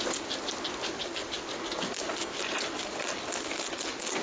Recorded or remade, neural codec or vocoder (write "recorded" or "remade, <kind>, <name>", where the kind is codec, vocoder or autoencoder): recorded